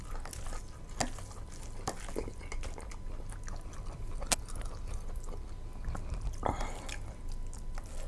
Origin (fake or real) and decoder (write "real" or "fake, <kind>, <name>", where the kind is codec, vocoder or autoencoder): real